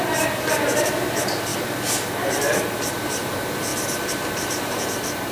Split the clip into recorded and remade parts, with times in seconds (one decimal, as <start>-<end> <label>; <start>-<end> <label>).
0.0-1.5 remade; 1.5-2.2 recorded; 2.2-5.3 remade